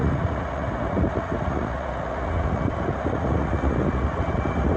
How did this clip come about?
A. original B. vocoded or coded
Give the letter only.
B